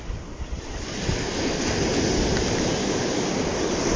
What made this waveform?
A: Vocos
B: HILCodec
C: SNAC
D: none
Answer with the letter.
D